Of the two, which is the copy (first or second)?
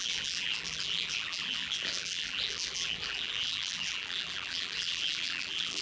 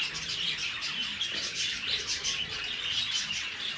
first